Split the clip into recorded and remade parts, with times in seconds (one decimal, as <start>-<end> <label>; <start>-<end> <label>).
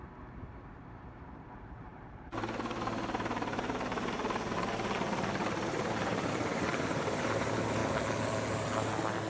0.0-7.8 remade; 7.8-9.3 recorded